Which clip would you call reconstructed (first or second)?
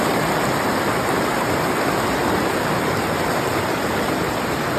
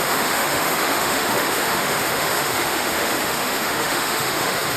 second